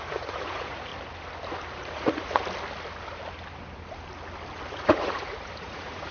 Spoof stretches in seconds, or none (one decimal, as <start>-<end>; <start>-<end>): 0.0-0.9; 1.7-2.4; 4.7-6.1